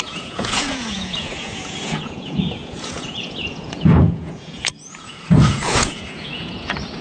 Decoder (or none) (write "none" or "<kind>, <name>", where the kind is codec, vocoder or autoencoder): vocoder, Vocos